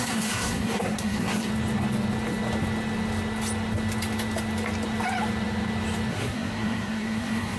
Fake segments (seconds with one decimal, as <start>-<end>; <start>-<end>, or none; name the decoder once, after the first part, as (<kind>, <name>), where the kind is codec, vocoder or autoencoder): 0.0-1.5 (codec, SNAC); 6.1-7.6